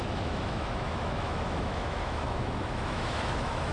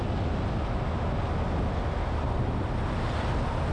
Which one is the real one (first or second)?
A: second